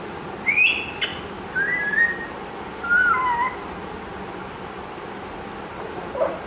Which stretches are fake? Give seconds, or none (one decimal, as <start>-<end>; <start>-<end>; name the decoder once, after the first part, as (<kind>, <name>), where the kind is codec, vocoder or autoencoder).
none